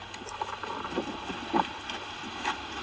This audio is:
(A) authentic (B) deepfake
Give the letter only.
A